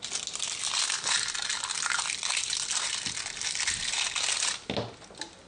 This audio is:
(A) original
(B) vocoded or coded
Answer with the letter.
A